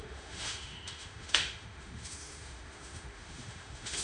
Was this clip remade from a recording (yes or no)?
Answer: yes